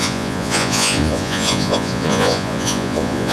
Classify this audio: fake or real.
fake